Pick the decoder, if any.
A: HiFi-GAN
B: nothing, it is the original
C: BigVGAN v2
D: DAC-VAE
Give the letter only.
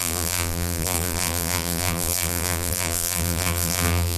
C